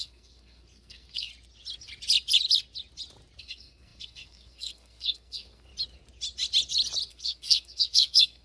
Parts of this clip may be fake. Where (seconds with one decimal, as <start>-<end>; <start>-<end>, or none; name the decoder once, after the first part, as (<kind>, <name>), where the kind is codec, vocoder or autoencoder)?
0.0-1.3 (codec, SNAC); 3.4-5.7; 7.1-8.4